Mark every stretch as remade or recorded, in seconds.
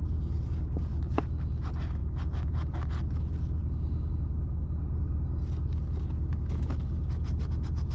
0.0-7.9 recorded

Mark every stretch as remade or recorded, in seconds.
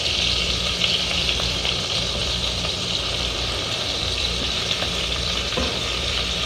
0.0-6.5 remade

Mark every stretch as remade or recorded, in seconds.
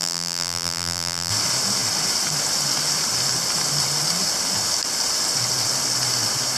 0.0-1.3 remade; 1.3-6.6 recorded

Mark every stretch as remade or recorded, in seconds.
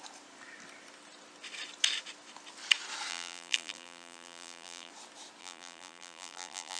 0.0-3.1 recorded; 3.1-4.9 remade; 4.9-5.4 recorded; 5.4-6.8 remade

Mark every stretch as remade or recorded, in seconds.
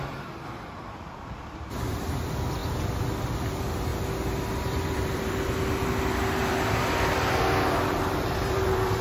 0.0-2.6 remade; 2.6-3.5 recorded; 3.5-3.9 remade; 3.9-4.6 recorded; 4.6-6.4 remade; 6.4-7.8 recorded; 7.8-9.0 remade